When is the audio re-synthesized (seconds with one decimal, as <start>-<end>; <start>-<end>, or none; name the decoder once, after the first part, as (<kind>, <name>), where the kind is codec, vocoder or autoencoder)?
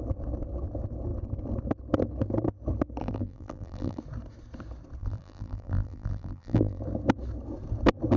3.0-4.0 (vocoder, BigVGAN v2); 5.0-6.8